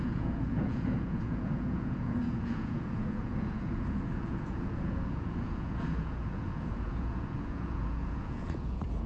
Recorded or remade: remade